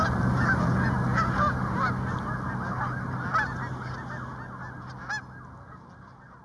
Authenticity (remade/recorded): recorded